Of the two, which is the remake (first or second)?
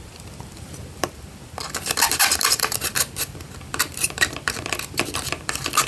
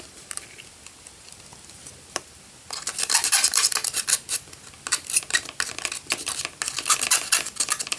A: first